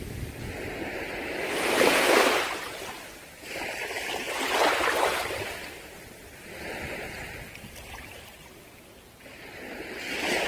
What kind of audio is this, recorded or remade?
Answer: recorded